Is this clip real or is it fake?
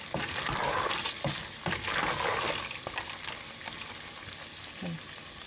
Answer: real